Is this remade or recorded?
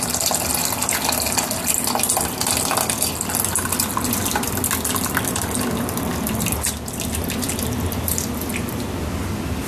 recorded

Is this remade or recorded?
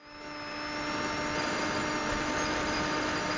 recorded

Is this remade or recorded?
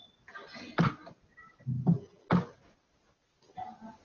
recorded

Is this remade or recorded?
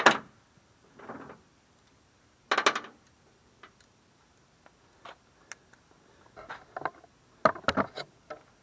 recorded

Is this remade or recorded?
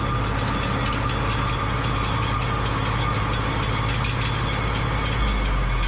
recorded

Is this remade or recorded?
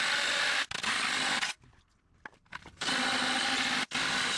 recorded